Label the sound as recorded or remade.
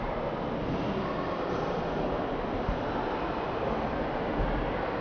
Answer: recorded